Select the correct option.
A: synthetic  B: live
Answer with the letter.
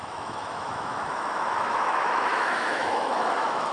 A